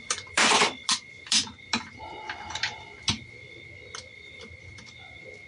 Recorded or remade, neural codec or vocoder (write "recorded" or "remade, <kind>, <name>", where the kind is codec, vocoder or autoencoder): remade, vocoder, BigVGAN v2